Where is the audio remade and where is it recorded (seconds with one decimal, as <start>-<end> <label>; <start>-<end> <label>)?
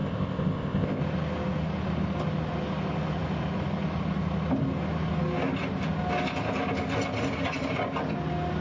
0.0-1.0 remade; 1.0-8.6 recorded